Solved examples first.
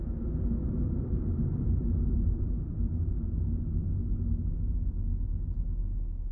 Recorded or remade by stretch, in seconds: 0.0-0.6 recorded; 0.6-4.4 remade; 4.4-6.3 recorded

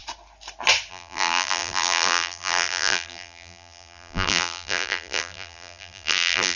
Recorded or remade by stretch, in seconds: 0.0-0.9 recorded; 0.9-6.6 remade

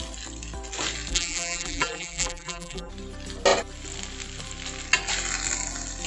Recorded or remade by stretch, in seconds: 0.0-1.1 recorded; 1.1-2.9 remade; 2.9-6.1 recorded

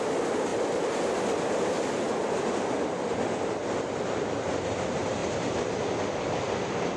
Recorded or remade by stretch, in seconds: 0.0-5.2 remade; 5.2-5.8 recorded; 5.8-7.0 remade

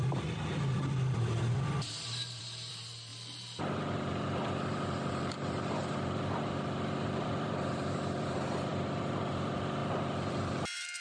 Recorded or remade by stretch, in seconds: 0.0-3.1 remade; 3.1-3.6 recorded; 3.6-11.0 remade

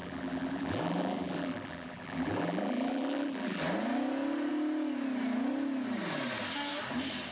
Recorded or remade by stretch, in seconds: 0.0-3.6 remade; 3.6-7.3 recorded

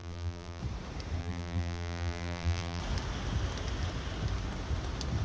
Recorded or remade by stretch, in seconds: 0.0-0.6 remade; 0.6-1.2 recorded; 1.2-2.8 remade; 2.8-5.2 recorded

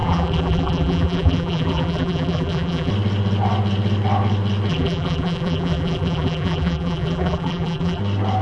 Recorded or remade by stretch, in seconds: 0.0-2.9 remade; 2.9-4.7 recorded; 4.7-8.0 remade; 8.0-8.4 recorded